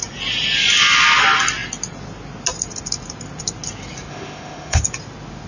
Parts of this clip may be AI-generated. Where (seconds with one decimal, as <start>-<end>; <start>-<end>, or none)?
4.1-4.8